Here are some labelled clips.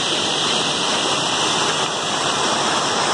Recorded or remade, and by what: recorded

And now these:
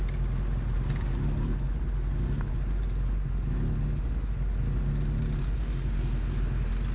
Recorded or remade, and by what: recorded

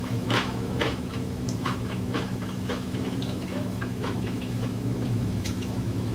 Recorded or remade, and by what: remade, autoencoder, DAC-VAE